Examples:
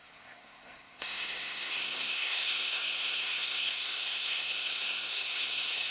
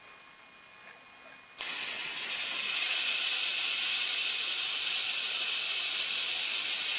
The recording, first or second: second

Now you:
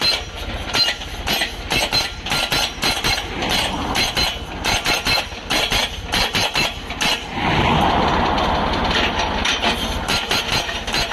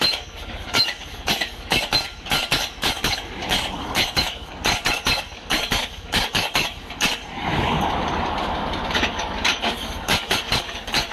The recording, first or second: first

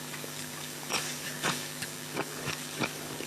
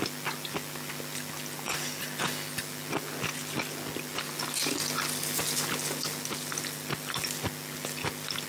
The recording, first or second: second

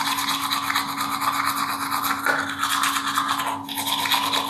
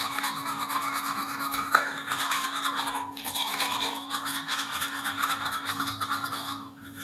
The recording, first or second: first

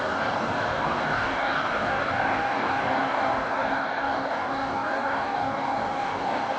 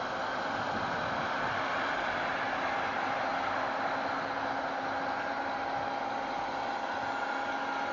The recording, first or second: second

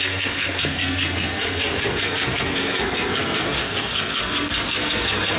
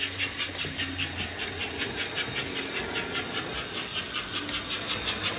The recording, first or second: second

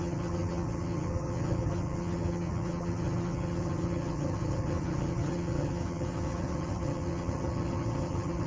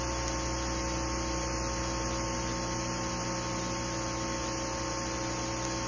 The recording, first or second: second